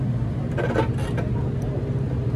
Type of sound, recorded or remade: recorded